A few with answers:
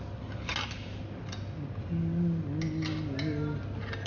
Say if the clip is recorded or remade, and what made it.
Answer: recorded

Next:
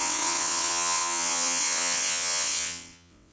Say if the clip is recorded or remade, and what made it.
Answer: remade, vocoder, WaveNeXt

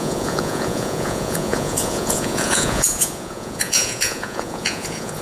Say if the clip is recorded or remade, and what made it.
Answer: remade, vocoder, Vocos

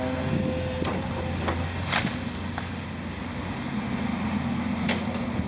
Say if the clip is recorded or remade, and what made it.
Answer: recorded